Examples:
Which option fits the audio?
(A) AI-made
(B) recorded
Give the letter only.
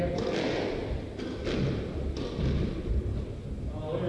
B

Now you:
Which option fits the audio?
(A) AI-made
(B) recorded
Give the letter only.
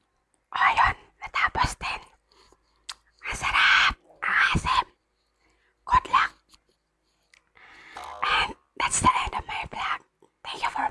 B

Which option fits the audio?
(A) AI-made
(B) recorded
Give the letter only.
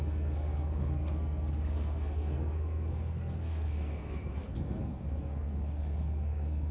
A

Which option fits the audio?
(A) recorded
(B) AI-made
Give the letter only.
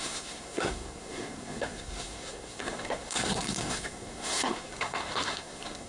B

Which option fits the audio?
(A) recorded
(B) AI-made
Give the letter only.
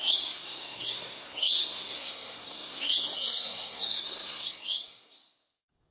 B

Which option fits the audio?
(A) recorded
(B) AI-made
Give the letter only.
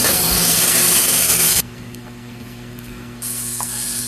B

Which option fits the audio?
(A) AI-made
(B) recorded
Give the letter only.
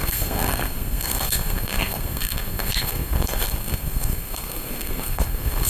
A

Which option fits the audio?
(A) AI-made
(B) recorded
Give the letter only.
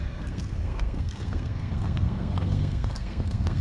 A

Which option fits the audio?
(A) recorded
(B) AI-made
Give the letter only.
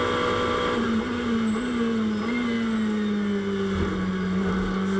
A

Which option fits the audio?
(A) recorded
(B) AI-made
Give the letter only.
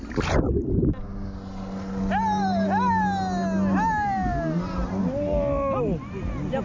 A